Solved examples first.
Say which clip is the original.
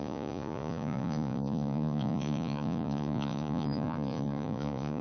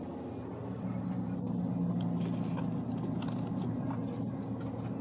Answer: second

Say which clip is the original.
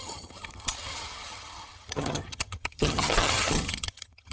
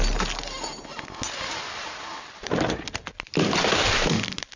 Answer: second